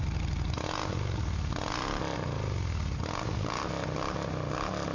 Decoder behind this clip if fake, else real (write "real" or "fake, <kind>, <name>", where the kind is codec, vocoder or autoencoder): real